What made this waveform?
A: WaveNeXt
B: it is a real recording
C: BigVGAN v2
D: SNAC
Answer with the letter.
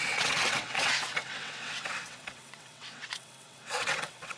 A